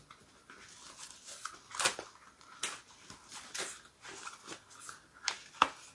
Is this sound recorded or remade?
recorded